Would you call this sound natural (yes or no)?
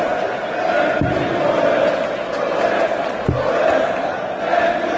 yes